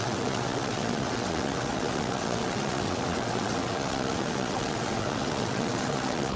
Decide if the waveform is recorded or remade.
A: remade